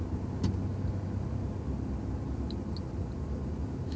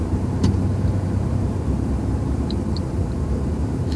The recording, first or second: first